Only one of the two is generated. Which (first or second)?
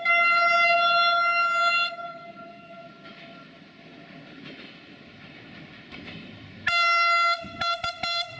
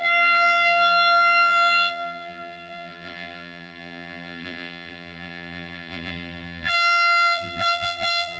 second